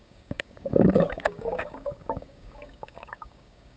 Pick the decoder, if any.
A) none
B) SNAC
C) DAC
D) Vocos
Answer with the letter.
C